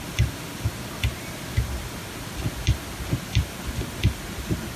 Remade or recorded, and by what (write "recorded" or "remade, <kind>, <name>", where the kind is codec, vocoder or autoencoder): recorded